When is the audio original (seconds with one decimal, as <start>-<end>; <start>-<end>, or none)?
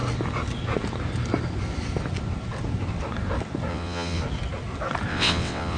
0.0-3.7; 4.2-5.1